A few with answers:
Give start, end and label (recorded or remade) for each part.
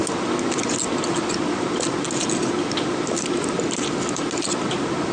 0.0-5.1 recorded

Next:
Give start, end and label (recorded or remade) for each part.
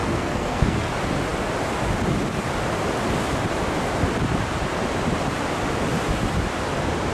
0.0-0.9 remade; 0.9-7.1 recorded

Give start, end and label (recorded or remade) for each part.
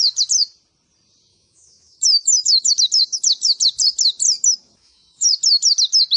0.0-1.3 recorded; 1.3-2.7 remade; 2.7-4.6 recorded; 4.6-5.3 remade; 5.3-6.2 recorded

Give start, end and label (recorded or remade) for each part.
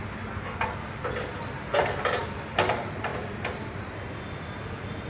0.0-5.1 recorded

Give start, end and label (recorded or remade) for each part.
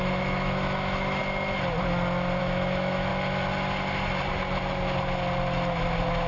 0.0-1.2 remade; 1.2-2.4 recorded; 2.4-3.1 remade; 3.1-6.3 recorded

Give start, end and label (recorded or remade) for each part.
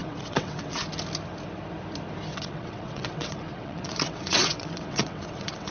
0.0-0.9 remade; 0.9-2.3 recorded; 2.3-5.7 remade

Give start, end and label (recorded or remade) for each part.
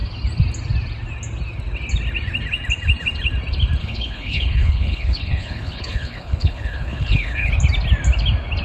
0.0-3.8 recorded; 3.8-7.5 remade; 7.5-8.6 recorded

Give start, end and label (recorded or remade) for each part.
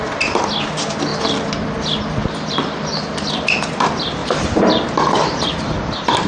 0.0-1.1 recorded; 1.1-1.6 remade; 1.6-2.2 recorded; 2.2-3.7 remade; 3.7-4.2 recorded; 4.2-5.6 remade; 5.6-6.3 recorded